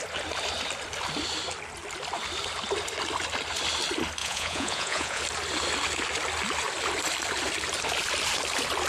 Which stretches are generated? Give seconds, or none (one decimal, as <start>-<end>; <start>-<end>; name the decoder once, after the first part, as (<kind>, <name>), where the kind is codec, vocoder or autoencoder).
4.2-5.2 (vocoder, Vocos)